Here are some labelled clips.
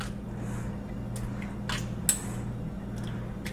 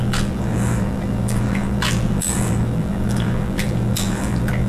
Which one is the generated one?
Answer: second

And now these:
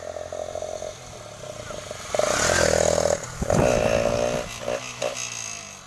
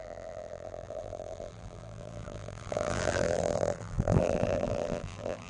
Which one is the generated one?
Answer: second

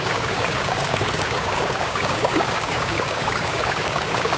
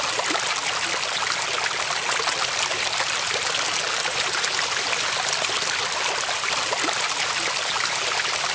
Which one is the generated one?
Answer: first